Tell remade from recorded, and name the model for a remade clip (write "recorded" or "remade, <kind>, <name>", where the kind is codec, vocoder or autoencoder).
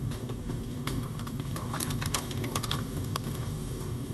remade, codec, DAC